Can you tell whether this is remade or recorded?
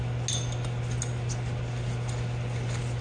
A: recorded